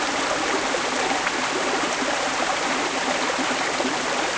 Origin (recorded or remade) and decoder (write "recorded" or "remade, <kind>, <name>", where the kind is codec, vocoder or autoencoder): recorded